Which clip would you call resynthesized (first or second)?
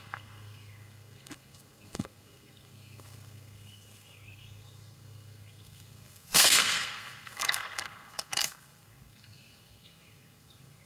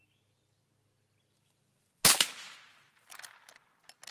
first